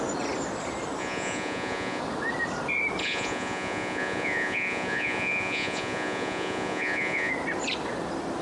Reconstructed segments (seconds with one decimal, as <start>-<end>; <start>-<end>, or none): 1.0-2.0; 3.0-7.3